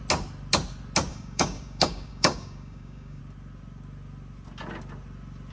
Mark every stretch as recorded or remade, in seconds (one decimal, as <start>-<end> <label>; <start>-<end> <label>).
0.0-1.1 recorded; 1.1-3.2 remade; 3.2-5.5 recorded

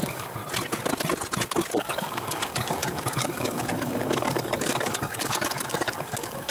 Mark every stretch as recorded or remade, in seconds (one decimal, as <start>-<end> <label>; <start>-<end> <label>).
0.0-0.4 remade; 0.4-1.8 recorded; 1.8-6.5 remade

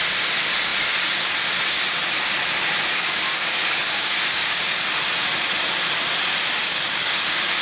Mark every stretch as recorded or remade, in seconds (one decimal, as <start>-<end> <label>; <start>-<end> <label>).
0.0-2.9 recorded; 2.9-4.8 remade; 4.8-6.5 recorded; 6.5-7.6 remade